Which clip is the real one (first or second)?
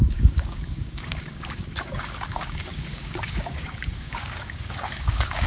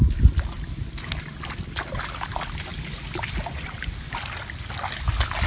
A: second